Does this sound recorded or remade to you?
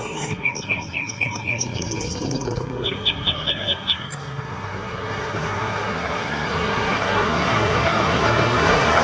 remade